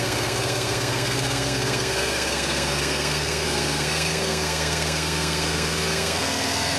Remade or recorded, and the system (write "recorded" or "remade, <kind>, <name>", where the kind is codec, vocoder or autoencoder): remade, codec, SNAC